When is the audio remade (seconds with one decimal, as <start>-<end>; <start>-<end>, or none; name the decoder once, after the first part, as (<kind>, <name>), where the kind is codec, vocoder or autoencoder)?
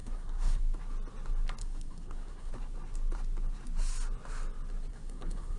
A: 0.0-0.6 (codec, SNAC); 1.6-2.5; 4.9-5.6